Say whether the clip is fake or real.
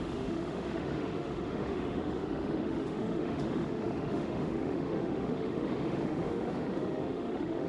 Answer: fake